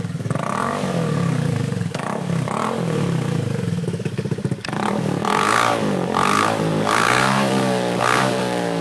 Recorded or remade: remade